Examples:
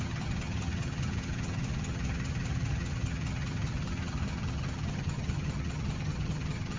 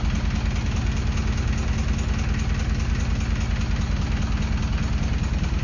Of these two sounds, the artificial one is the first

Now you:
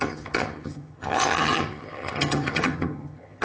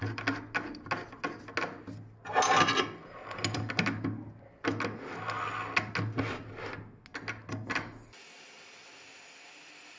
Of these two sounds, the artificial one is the first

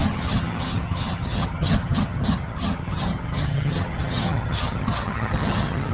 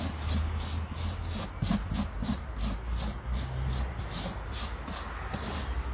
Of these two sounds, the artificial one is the first